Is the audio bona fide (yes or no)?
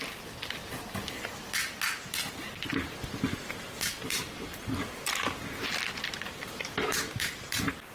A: yes